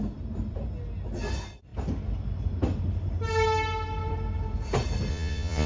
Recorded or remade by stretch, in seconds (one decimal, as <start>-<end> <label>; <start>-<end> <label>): 0.0-5.1 recorded; 5.1-5.7 remade